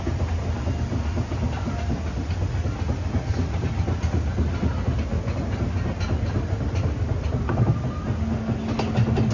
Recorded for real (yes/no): yes